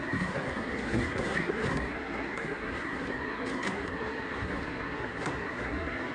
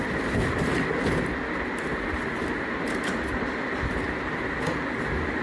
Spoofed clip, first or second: first